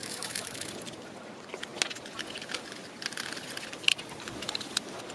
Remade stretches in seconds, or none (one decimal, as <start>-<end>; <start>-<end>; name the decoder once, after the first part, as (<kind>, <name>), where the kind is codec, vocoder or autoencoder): 0.0-0.7 (autoencoder, DAC-VAE)